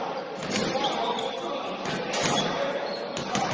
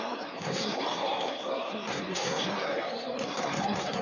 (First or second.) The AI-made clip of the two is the second